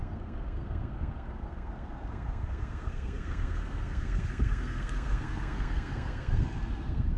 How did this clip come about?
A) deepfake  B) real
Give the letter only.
A